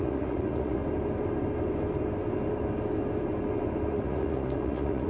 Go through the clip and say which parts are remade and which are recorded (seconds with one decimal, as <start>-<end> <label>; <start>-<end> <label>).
0.0-0.8 remade; 0.8-3.9 recorded; 3.9-5.1 remade